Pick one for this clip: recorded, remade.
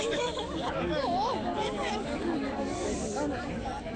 remade